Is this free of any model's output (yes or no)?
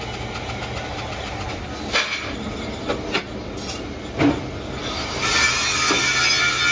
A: yes